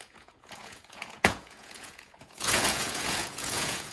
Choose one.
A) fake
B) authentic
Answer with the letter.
A